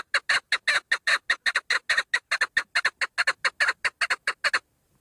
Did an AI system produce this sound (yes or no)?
no